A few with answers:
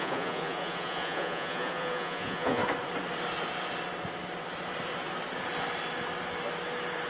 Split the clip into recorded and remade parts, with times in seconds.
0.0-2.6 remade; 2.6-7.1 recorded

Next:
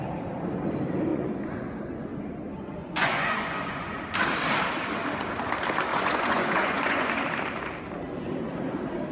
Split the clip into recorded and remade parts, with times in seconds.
0.0-1.1 recorded; 1.1-2.2 remade; 2.2-2.8 recorded; 2.8-4.0 remade; 4.0-5.9 recorded; 5.9-7.1 remade; 7.1-9.1 recorded

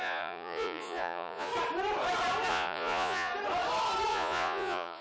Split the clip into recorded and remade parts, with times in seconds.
0.0-1.5 remade; 1.5-2.5 recorded; 2.5-3.3 remade; 3.3-4.1 recorded; 4.1-5.0 remade

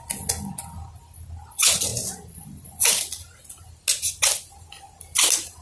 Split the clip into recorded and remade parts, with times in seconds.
0.0-5.6 recorded

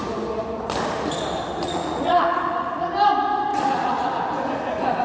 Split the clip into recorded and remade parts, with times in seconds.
0.0-1.6 recorded; 1.6-2.9 remade; 2.9-3.5 recorded; 3.5-4.1 remade; 4.1-5.0 recorded

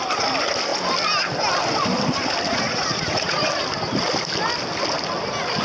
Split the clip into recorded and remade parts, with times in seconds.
0.0-2.5 recorded; 2.5-3.5 remade; 3.5-5.6 recorded

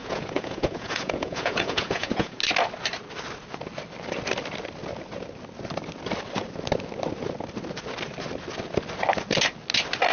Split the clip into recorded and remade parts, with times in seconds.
0.0-2.4 remade; 2.4-10.1 recorded